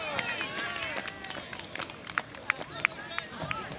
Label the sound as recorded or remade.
recorded